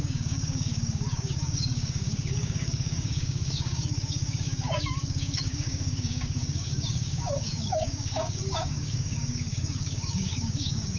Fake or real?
fake